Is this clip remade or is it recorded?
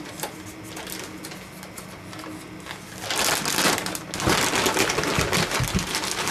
recorded